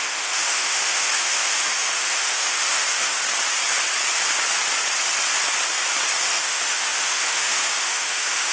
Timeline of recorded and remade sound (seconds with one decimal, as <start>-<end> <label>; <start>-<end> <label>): 0.0-3.2 remade; 3.2-6.2 recorded; 6.2-8.5 remade